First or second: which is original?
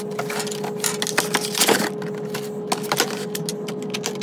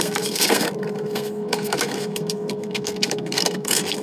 first